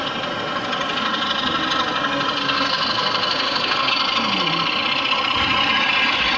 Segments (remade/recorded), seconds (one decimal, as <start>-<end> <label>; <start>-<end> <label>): 0.0-2.4 recorded; 2.4-3.9 remade; 3.9-6.4 recorded